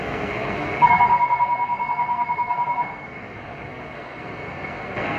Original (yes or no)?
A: no